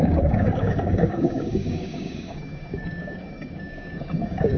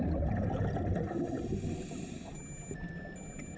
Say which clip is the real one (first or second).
second